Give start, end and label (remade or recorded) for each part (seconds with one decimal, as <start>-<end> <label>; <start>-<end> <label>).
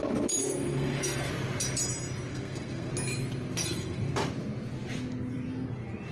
0.0-0.4 recorded; 0.4-1.3 remade; 1.3-2.3 recorded; 2.3-2.9 remade; 2.9-3.6 recorded; 3.6-4.1 remade; 4.1-6.1 recorded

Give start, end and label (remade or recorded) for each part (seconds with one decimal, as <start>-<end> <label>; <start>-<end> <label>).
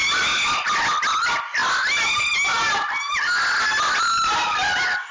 0.0-5.1 recorded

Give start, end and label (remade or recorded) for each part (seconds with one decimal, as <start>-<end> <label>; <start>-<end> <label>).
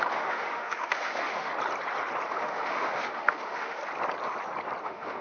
0.0-1.5 remade; 1.5-2.3 recorded; 2.3-3.8 remade; 3.8-4.8 recorded; 4.8-5.2 remade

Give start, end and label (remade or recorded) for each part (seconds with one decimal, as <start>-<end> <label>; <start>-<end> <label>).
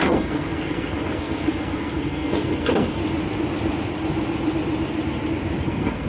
0.0-3.0 remade; 3.0-5.6 recorded; 5.6-6.1 remade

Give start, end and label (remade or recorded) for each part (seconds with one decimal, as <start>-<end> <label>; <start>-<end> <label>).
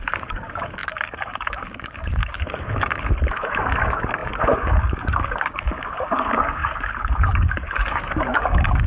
0.0-8.9 remade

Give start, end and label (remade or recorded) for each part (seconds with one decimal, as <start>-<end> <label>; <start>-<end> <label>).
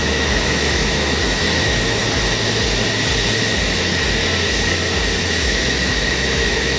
0.0-2.0 remade; 2.0-5.2 recorded; 5.2-6.8 remade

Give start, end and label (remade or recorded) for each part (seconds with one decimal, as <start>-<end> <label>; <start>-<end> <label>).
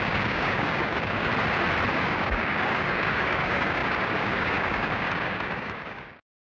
0.0-1.3 remade; 1.3-1.9 recorded; 1.9-6.5 remade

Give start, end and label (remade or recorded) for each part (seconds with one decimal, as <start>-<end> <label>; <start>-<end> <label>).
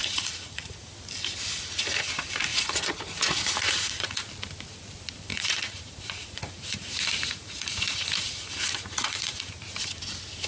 0.0-0.9 remade; 0.9-2.5 recorded; 2.5-4.2 remade; 4.2-5.3 recorded; 5.3-9.4 remade; 9.4-10.5 recorded